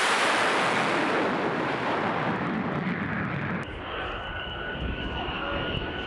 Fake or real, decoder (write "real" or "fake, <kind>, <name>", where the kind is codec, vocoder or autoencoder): real